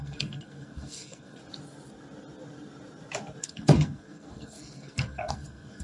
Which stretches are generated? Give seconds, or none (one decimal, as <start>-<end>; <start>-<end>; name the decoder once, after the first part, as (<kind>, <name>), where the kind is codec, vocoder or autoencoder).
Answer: 0.0-1.4 (codec, SNAC); 3.4-5.8